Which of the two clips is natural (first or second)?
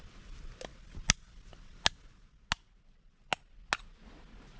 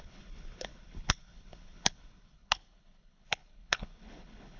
first